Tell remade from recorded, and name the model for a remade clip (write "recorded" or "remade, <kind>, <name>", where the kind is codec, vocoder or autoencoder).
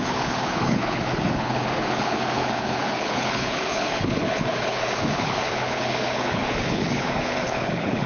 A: remade, codec, HILCodec